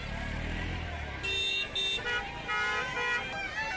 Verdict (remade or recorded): recorded